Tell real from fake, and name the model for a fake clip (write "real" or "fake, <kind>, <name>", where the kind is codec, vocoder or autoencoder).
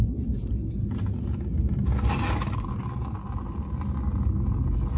real